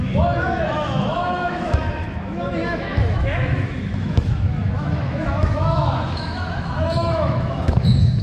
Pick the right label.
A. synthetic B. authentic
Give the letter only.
A